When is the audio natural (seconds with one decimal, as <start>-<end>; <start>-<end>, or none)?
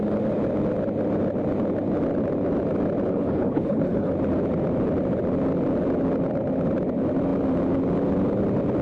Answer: 0.0-3.1; 4.1-8.8